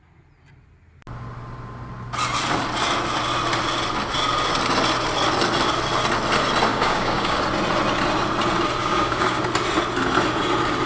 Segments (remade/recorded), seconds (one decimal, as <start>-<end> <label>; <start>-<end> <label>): 0.0-6.7 recorded; 6.7-7.4 remade; 7.4-8.8 recorded; 8.8-9.4 remade; 9.4-10.9 recorded